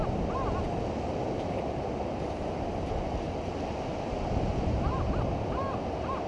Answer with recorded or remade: recorded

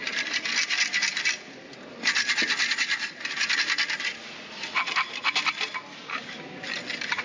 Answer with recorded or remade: recorded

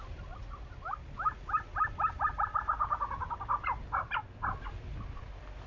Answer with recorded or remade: recorded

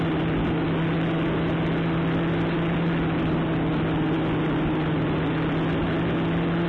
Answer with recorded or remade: recorded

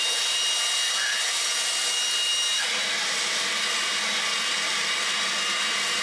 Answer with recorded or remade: recorded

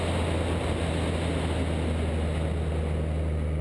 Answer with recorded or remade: recorded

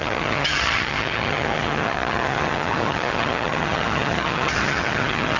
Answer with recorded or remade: remade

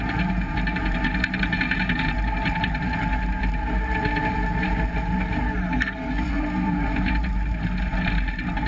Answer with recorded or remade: remade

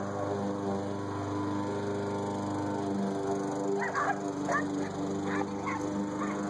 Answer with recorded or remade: recorded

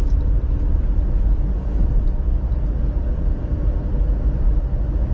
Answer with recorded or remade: recorded